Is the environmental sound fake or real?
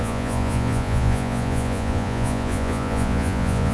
fake